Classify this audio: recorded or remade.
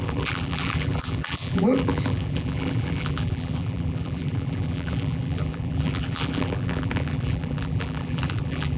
remade